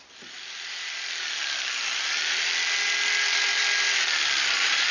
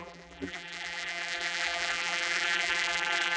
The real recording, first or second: first